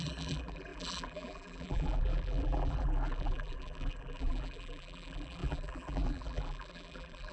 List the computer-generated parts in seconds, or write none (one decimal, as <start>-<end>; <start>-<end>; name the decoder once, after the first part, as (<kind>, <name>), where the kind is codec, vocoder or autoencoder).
0.0-7.3 (vocoder, BigVGAN v2)